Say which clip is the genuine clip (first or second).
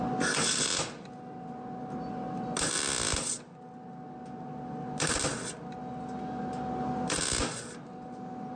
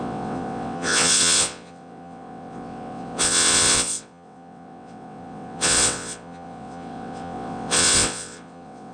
first